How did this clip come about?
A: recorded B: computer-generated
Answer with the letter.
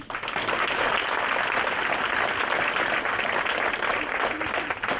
A